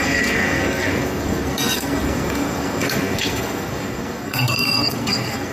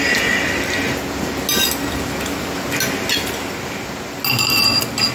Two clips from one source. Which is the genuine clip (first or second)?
second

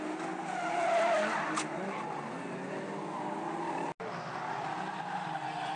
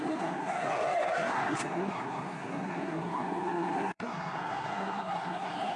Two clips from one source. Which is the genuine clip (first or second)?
first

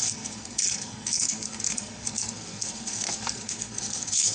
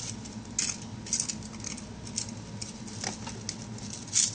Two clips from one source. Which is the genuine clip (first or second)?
second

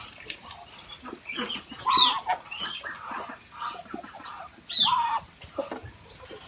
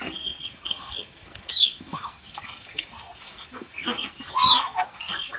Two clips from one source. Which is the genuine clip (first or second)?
first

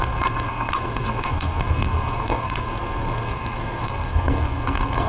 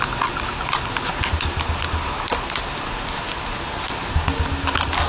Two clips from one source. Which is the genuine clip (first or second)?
second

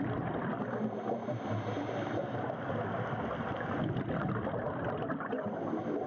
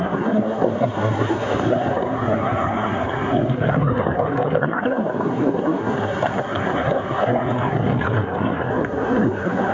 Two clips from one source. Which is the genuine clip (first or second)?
first